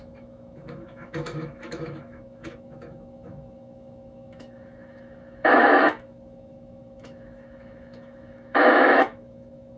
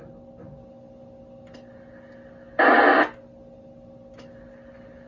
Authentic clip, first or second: second